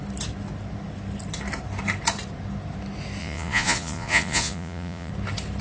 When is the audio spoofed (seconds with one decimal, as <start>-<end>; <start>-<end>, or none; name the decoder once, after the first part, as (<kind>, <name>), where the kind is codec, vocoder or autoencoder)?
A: 3.2-5.1 (vocoder, Vocos)